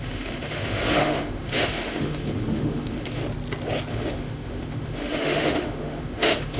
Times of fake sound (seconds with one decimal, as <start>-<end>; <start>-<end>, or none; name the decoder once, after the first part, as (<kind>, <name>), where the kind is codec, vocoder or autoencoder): 0.0-3.2 (autoencoder, DAC-VAE); 3.9-6.6